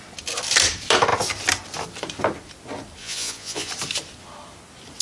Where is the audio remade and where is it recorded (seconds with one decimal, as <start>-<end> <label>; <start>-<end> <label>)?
0.0-3.0 recorded; 3.0-3.7 remade; 3.7-5.0 recorded